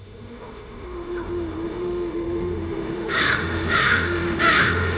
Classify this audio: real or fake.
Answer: fake